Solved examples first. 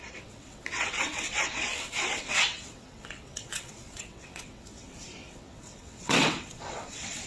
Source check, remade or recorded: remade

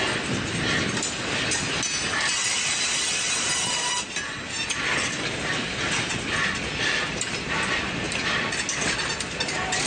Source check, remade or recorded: recorded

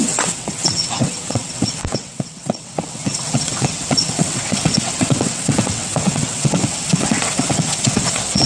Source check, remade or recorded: remade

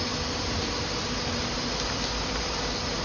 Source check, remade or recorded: recorded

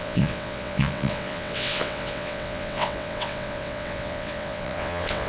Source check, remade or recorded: remade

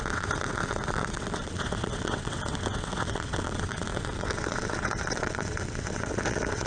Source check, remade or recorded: remade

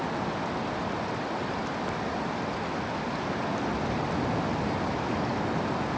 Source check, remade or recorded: recorded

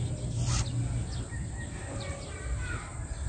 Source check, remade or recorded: recorded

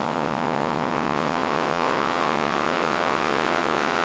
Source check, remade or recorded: remade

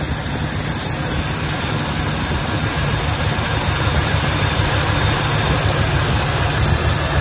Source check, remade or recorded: recorded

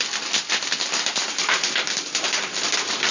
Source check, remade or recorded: recorded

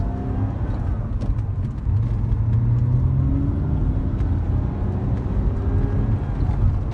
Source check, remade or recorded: recorded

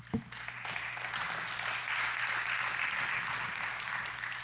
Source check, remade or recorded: recorded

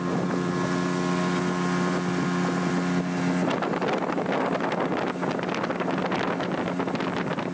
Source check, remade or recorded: recorded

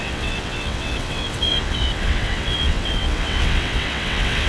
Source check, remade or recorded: remade